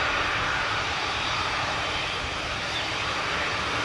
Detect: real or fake fake